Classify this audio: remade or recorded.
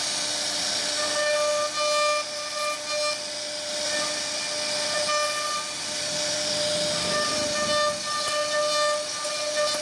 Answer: recorded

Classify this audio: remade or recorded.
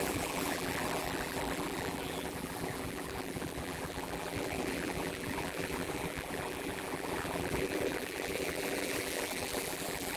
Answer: remade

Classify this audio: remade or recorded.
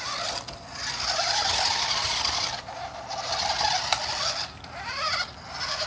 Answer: recorded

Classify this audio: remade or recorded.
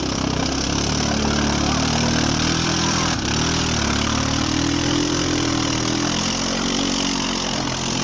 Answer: remade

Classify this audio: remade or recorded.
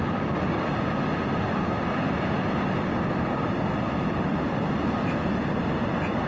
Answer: recorded